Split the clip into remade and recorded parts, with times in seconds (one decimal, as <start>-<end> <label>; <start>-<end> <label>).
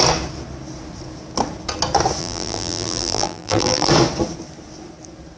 0.0-2.2 recorded; 2.2-3.9 remade; 3.9-5.4 recorded